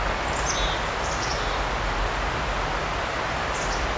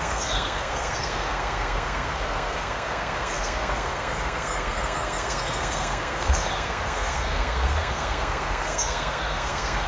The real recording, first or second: first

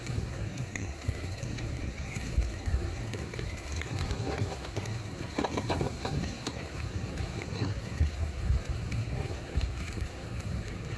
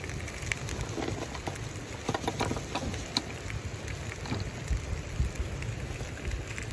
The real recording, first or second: second